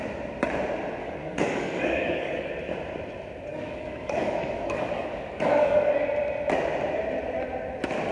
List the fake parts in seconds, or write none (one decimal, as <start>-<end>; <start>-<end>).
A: 1.0-2.5; 3.5-6.0